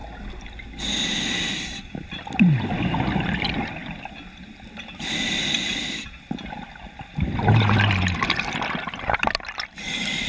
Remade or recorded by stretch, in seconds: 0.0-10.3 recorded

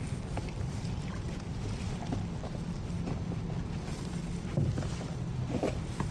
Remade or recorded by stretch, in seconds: 0.0-6.1 recorded

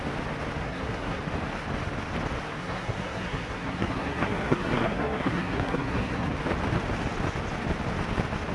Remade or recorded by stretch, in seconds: 0.0-0.6 recorded; 0.6-1.2 remade; 1.2-2.6 recorded; 2.6-6.3 remade; 6.3-8.5 recorded

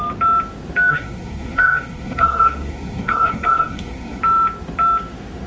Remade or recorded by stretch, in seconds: 0.0-0.9 recorded; 0.9-4.2 remade; 4.2-5.5 recorded

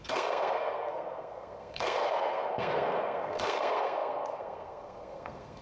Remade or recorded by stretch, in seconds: 0.0-5.6 remade